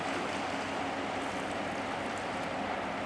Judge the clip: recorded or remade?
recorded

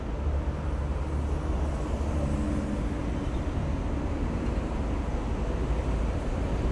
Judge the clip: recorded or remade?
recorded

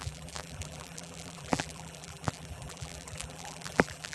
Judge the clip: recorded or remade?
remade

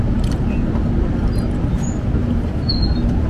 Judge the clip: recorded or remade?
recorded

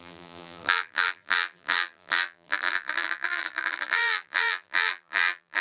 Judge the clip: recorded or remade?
remade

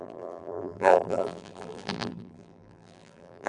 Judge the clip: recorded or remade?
remade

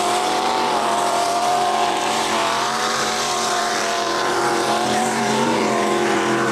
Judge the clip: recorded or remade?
remade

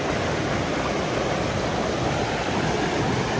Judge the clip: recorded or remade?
recorded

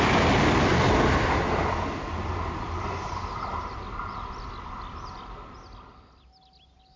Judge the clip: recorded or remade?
recorded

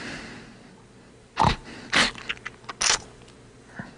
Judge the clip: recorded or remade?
recorded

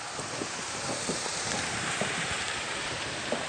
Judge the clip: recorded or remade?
remade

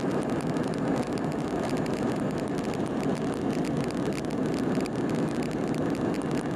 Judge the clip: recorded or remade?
recorded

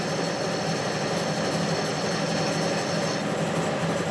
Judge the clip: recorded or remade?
recorded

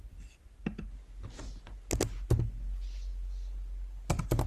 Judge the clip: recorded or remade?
recorded